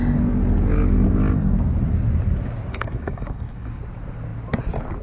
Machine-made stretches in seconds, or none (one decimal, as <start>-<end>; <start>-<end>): 2.7-3.8